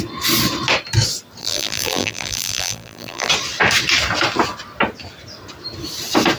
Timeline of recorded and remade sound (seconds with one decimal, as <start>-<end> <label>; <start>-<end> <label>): 0.0-1.4 recorded; 1.4-3.3 remade; 3.3-6.4 recorded